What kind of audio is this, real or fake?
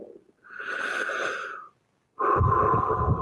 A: real